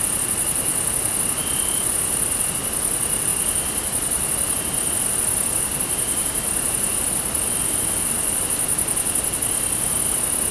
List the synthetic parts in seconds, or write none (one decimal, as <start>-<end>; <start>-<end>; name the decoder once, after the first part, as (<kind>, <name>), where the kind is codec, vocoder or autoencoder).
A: none